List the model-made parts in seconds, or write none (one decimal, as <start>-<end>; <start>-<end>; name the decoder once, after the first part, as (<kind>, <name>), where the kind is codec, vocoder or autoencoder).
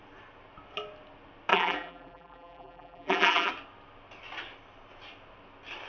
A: 1.5-3.5 (vocoder, BigVGAN v2)